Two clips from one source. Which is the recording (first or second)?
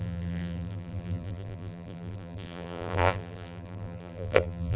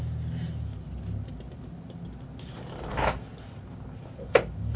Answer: second